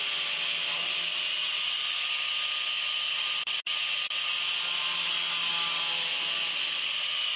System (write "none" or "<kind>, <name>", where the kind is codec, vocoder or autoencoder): none